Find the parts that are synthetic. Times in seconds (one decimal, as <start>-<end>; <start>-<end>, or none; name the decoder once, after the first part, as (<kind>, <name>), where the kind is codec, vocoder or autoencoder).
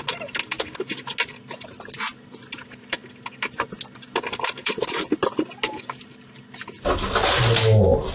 none